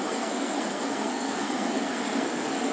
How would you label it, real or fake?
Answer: fake